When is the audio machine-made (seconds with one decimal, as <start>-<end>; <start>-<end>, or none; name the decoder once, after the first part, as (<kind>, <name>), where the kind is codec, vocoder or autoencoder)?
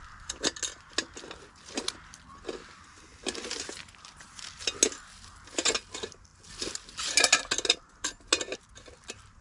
none